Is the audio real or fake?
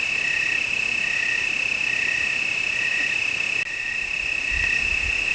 real